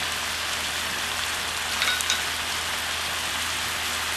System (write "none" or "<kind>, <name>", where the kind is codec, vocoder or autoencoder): none